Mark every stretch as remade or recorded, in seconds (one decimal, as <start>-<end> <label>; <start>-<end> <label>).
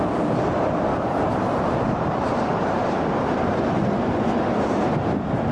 0.0-0.9 recorded; 0.9-3.1 remade; 3.1-5.5 recorded